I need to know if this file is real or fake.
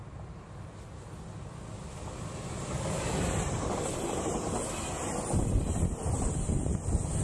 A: real